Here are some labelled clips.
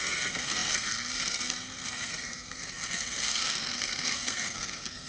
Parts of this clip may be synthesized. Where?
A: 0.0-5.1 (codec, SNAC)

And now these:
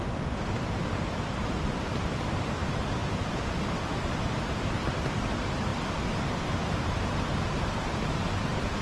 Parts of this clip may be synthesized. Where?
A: 0.0-1.0 (vocoder, BigVGAN v2); 1.5-5.7; 6.5-8.8

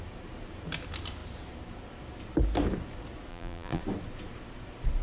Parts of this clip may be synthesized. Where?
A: 3.3-3.8 (vocoder, BigVGAN v2)